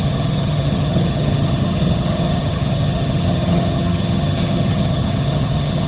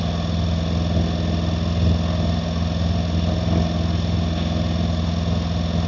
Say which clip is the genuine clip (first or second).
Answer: second